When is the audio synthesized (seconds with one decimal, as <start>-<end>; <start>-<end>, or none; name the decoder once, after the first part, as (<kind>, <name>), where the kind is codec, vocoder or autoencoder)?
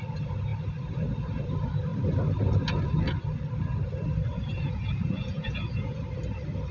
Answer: 4.3-6.0 (vocoder, Vocos)